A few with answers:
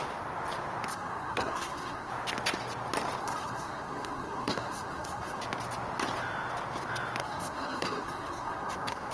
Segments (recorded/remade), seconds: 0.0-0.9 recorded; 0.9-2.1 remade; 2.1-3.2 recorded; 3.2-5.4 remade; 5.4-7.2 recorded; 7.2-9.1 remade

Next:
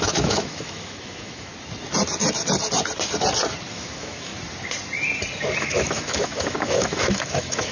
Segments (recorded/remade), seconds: 0.0-1.5 remade; 1.5-3.7 recorded; 3.7-4.3 remade; 4.3-5.6 recorded; 5.6-7.7 remade

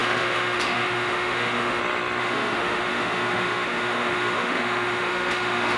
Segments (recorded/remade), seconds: 0.0-1.8 remade; 1.8-2.2 recorded; 2.2-5.8 remade